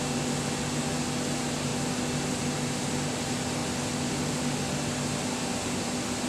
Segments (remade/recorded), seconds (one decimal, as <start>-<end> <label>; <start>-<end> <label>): 0.0-6.3 recorded